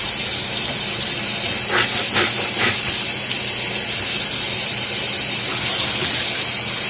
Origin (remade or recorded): recorded